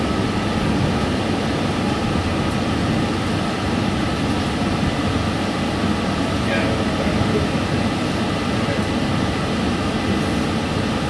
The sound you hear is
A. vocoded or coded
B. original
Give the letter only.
B